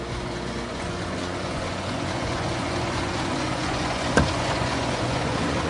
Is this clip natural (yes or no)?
no